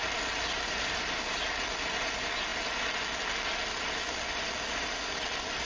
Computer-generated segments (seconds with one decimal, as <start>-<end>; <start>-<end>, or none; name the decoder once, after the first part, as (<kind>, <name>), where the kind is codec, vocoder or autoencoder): none